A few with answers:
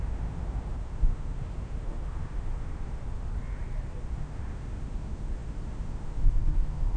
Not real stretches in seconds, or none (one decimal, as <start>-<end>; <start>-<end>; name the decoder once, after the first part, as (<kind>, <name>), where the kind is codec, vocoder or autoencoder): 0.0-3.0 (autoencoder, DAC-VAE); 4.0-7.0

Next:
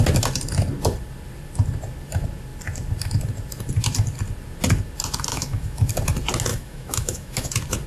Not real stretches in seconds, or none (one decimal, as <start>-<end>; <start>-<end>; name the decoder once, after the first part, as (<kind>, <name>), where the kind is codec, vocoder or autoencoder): 5.3-5.9 (autoencoder, DAC-VAE); 6.5-7.5

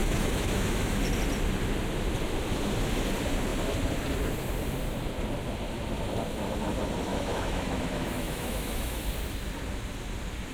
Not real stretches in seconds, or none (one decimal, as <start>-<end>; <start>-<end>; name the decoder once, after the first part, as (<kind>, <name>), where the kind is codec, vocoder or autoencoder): 0.0-1.0 (autoencoder, DAC-VAE); 7.1-9.0

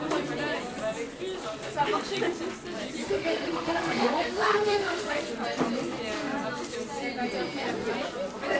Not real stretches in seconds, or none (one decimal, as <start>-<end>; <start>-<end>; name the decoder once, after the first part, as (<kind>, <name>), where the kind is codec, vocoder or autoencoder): 3.0-5.2 (autoencoder, DAC-VAE)

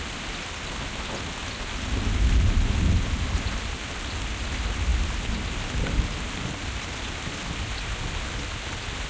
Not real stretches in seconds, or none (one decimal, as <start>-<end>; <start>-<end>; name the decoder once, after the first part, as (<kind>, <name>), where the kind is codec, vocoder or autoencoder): none

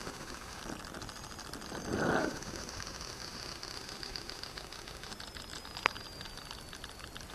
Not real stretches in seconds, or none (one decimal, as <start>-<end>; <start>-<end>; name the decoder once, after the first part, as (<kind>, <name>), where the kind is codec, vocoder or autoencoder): 0.0-0.6 (autoencoder, DAC-VAE); 2.2-5.1

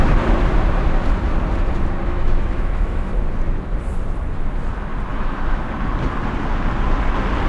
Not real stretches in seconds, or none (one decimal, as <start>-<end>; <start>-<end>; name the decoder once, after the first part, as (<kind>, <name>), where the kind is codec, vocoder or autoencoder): 2.1-3.1 (autoencoder, DAC-VAE); 5.1-5.6

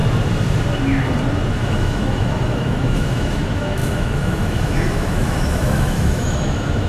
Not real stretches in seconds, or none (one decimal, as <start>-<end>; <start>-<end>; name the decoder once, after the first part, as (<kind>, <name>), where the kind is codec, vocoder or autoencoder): 1.5-6.9 (autoencoder, DAC-VAE)